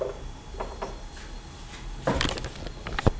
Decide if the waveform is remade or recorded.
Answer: recorded